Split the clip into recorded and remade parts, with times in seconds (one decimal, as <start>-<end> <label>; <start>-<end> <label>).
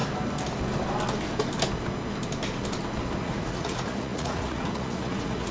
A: 0.0-3.2 recorded; 3.2-5.5 remade